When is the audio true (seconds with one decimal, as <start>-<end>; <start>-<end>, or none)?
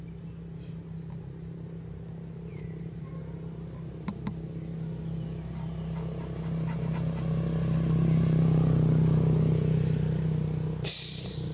0.0-2.5; 3.1-11.5